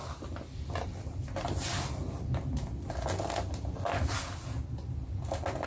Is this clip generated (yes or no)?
no